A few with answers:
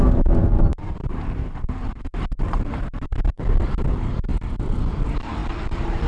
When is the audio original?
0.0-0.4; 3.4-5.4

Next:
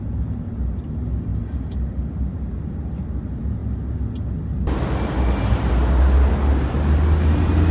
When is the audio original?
0.0-7.7

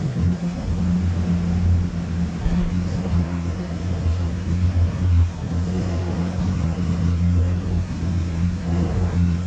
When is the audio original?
0.8-2.4

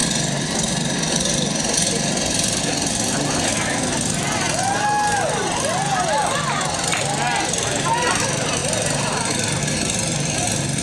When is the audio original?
0.0-10.8

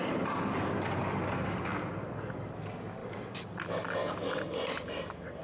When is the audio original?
0.0-5.4